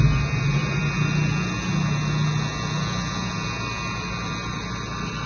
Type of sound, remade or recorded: recorded